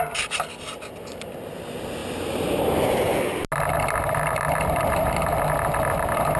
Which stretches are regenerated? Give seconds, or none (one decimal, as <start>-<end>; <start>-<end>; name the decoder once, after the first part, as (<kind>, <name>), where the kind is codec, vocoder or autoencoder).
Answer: none